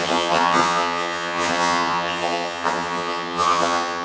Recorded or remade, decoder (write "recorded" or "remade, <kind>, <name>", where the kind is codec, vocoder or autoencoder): remade, vocoder, HiFi-GAN